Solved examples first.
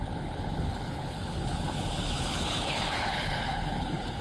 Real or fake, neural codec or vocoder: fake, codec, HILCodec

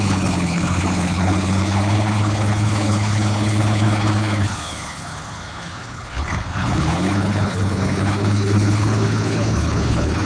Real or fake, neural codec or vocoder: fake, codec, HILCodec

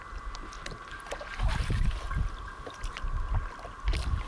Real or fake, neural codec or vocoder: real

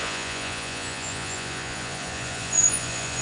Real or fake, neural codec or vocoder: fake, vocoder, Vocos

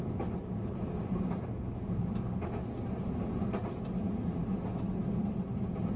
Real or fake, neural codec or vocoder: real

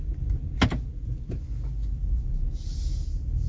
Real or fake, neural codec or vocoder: real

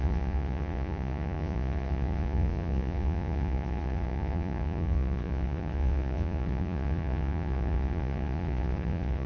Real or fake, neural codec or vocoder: fake, vocoder, Vocos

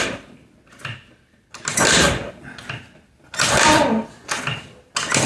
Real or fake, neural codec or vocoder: real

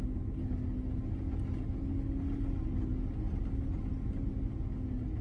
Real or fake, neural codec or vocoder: real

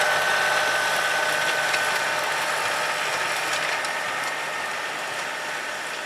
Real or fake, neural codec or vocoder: real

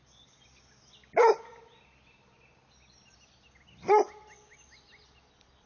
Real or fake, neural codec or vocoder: real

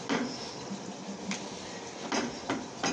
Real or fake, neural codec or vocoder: real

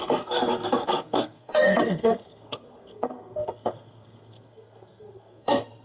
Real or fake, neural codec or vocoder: fake, codec, SNAC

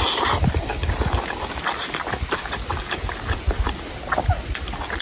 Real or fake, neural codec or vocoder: real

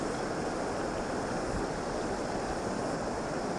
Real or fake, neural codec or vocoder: real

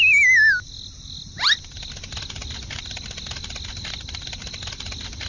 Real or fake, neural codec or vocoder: real